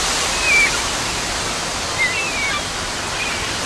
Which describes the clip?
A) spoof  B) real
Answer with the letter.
B